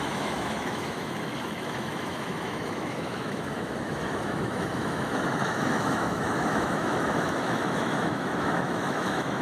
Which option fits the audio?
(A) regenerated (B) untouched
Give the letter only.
A